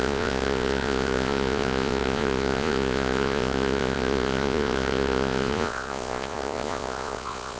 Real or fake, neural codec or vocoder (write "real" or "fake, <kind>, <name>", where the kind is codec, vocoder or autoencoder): fake, vocoder, Vocos